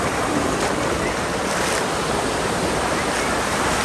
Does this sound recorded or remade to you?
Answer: recorded